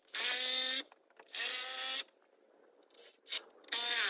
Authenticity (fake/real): real